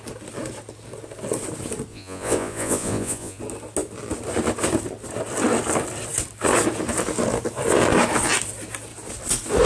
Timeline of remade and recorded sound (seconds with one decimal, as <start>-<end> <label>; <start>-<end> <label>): 0.0-1.9 recorded; 1.9-3.4 remade; 3.4-9.7 recorded